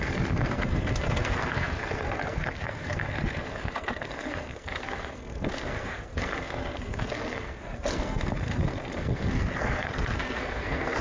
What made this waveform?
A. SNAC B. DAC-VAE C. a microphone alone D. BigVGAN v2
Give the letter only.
A